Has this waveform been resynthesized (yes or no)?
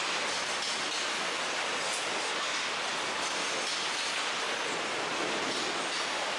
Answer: no